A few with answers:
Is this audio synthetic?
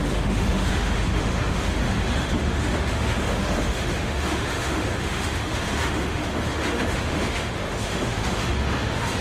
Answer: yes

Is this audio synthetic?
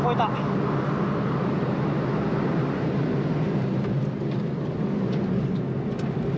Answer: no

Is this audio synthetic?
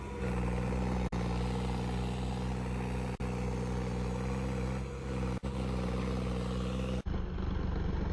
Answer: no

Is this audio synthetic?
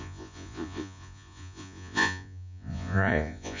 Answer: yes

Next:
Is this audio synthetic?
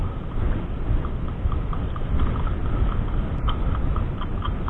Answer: no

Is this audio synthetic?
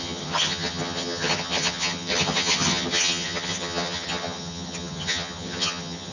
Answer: yes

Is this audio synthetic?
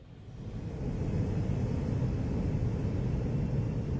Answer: no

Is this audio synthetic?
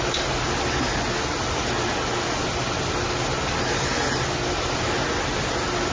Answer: no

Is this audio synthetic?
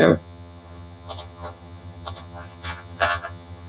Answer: yes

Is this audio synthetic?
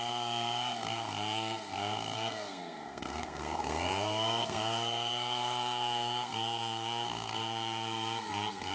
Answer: yes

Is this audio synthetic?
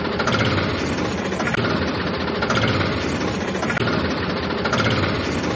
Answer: no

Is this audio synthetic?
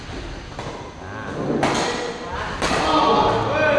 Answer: no